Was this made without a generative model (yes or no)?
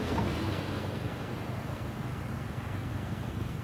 no